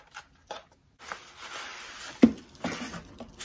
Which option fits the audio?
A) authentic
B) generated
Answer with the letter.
A